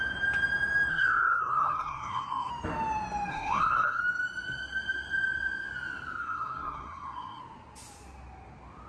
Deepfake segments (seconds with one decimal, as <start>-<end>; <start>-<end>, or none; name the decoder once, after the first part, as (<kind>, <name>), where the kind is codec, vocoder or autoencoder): 0.9-2.5 (codec, SNAC); 3.3-4.0; 6.2-7.4